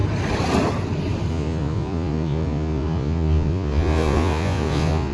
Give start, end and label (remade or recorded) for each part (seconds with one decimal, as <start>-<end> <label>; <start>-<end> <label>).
0.0-1.3 recorded; 1.3-5.1 remade